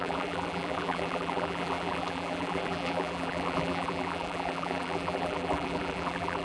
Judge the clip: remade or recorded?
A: remade